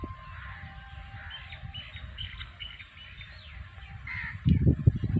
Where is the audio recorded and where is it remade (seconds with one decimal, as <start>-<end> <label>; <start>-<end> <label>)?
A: 0.0-2.1 recorded; 2.1-2.8 remade; 2.8-5.2 recorded